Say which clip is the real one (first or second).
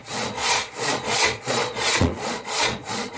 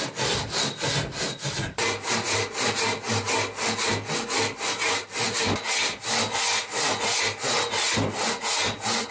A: second